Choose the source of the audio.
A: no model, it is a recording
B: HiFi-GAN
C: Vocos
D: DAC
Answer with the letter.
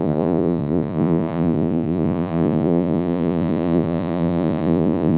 C